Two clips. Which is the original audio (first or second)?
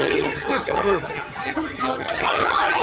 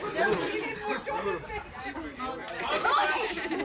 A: second